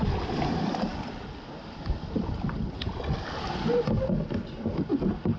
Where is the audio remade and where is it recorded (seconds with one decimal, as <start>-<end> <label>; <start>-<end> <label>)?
0.0-5.4 recorded